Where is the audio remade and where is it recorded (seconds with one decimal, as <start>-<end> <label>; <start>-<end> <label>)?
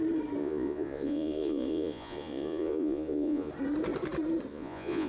0.0-0.4 recorded; 0.4-3.5 remade; 3.5-4.5 recorded; 4.5-5.1 remade